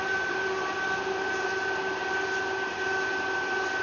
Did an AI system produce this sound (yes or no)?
no